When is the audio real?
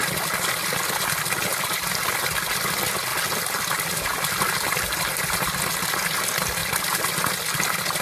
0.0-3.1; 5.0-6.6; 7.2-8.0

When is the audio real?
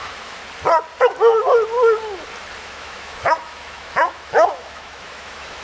0.4-2.6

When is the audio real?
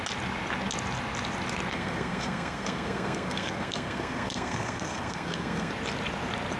0.0-1.7; 5.7-6.6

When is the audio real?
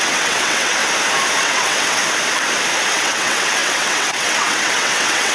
0.8-1.4; 2.0-2.9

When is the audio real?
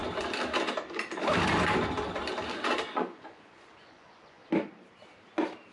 0.0-2.9; 4.4-5.7